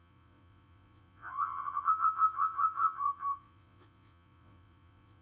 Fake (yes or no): yes